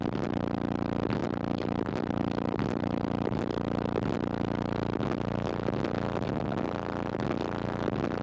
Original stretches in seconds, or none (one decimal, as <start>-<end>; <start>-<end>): 0.0-1.2; 3.4-8.2